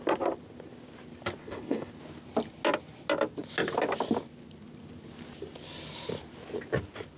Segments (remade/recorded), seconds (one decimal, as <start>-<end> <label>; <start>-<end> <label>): 0.0-1.4 recorded; 1.4-1.9 remade; 1.9-7.2 recorded